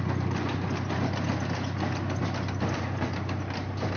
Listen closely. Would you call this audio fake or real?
real